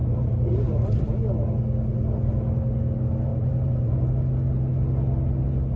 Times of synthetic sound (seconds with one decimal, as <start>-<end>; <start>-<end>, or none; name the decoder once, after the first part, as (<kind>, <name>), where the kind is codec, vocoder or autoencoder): 0.0-1.1 (vocoder, BigVGAN v2); 3.3-4.1